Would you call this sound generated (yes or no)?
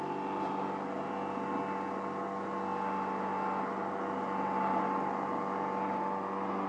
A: no